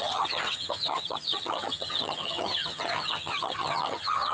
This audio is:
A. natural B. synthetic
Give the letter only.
B